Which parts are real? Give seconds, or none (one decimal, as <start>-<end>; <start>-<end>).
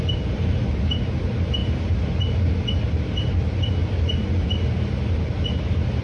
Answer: 3.8-5.1